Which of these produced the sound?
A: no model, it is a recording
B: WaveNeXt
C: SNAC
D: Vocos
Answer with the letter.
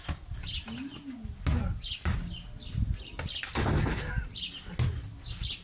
A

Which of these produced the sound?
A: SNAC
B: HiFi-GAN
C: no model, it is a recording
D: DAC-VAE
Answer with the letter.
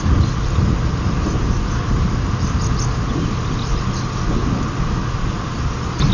C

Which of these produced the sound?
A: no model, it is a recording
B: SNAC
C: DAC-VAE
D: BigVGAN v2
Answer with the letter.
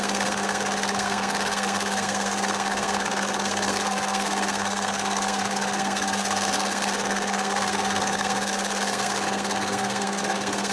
B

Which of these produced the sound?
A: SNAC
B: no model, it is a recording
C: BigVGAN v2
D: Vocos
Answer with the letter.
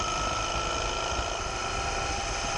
B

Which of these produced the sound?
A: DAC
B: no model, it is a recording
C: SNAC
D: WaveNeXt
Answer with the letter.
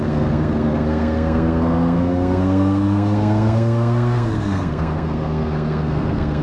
C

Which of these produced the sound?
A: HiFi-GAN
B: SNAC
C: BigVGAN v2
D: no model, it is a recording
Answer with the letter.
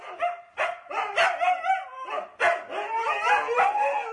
D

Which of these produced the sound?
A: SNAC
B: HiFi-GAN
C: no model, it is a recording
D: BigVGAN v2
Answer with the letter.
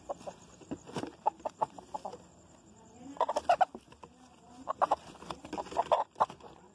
C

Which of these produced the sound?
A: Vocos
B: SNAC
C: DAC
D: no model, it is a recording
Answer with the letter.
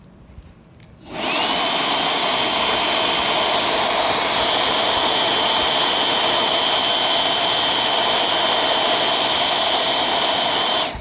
D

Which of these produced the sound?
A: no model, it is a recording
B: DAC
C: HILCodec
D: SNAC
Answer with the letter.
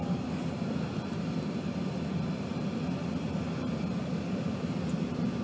A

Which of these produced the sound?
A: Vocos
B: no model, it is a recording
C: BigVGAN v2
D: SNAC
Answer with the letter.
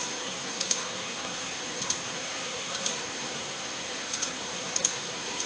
D